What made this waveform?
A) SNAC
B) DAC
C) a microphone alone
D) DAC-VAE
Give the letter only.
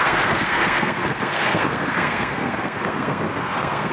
A